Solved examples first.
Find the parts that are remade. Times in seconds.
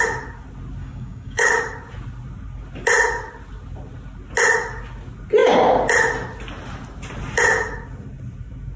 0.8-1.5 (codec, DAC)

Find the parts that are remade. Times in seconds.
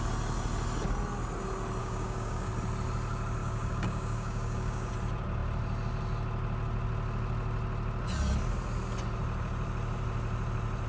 1.8-2.5 (codec, DAC); 3.4-4.9